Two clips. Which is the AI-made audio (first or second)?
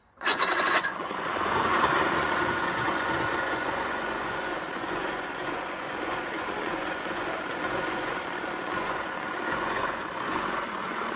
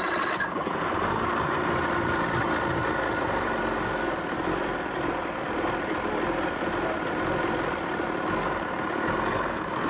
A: first